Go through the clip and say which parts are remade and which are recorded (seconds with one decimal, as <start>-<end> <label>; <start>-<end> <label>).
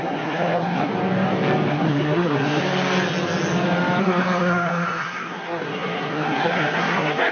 0.0-0.9 remade; 0.9-1.7 recorded; 1.7-2.6 remade; 2.6-4.0 recorded; 4.0-7.3 remade